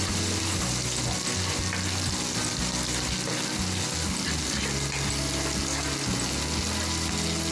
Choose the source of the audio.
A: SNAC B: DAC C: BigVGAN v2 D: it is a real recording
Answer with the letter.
D